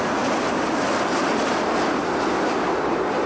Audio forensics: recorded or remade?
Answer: recorded